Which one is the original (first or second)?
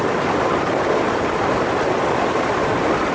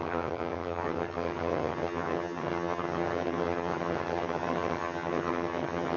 first